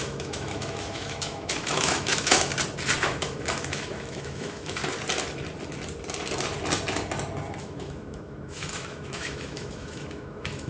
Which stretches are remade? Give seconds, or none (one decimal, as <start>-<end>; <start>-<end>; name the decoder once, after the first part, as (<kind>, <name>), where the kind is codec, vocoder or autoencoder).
0.0-2.5 (autoencoder, DAC-VAE); 3.0-4.8; 7.6-10.7